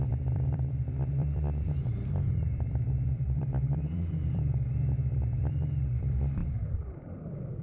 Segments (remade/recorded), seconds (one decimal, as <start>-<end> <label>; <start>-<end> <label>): 0.0-7.6 remade